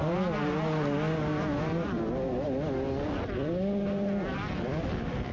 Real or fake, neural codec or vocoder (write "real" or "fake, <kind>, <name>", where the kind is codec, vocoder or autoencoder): real